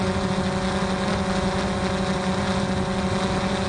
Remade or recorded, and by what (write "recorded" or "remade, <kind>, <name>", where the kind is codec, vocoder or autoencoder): recorded